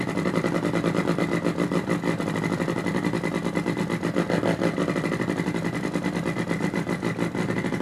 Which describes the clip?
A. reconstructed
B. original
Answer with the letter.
B